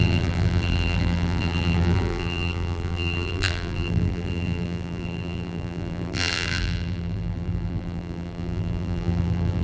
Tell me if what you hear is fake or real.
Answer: fake